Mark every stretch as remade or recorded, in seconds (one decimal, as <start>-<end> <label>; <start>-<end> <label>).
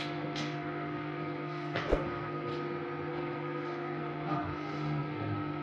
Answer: 0.0-2.5 remade; 2.5-3.1 recorded; 3.1-5.6 remade